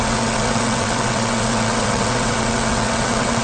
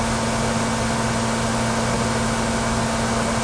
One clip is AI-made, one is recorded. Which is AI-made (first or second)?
first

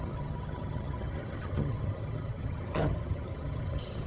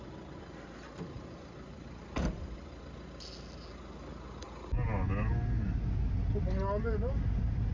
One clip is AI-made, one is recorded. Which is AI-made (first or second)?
first